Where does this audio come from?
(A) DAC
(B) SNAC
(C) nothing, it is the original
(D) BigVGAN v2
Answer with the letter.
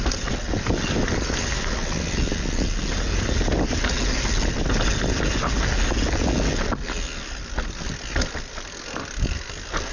C